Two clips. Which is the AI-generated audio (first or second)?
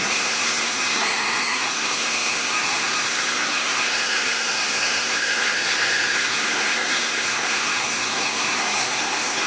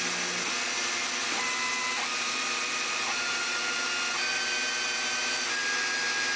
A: first